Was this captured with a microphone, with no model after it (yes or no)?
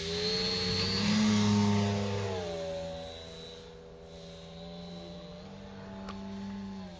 yes